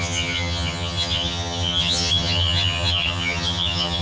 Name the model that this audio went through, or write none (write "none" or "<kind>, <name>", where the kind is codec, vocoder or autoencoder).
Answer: vocoder, HiFi-GAN